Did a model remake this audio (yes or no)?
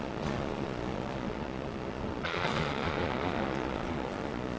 yes